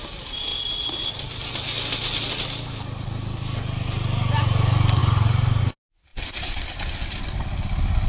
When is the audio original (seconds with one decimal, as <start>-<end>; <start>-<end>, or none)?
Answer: 0.0-5.0; 5.6-6.1; 6.8-8.1